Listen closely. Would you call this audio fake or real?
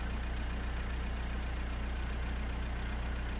real